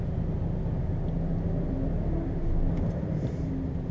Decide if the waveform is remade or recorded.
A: recorded